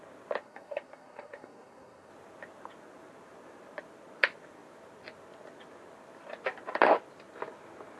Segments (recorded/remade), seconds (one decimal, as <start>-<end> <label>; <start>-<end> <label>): 0.0-0.4 recorded; 0.4-2.1 remade; 2.1-8.0 recorded